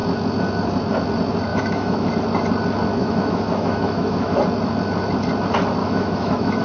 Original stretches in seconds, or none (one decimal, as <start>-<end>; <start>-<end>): 0.0-1.5; 2.1-3.0; 4.4-5.8